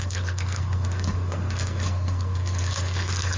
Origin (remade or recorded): remade